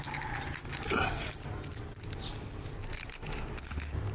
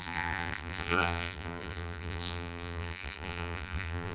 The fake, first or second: second